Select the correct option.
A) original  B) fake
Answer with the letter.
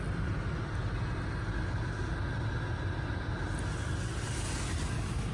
A